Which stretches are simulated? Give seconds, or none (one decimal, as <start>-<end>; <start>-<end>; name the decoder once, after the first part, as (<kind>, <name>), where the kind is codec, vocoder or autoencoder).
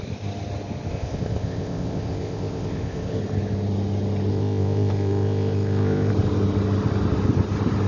0.9-3.2 (codec, ZipCodec); 4.3-6.1